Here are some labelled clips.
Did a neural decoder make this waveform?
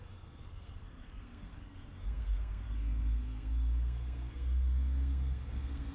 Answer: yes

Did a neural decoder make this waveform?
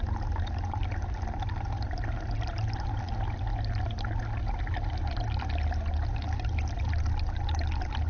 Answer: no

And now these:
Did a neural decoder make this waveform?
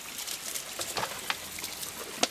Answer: no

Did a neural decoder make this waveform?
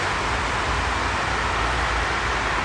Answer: no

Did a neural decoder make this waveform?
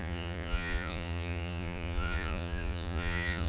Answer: yes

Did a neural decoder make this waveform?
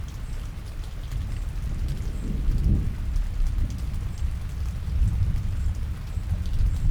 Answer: no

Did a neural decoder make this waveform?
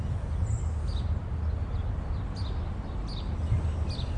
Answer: no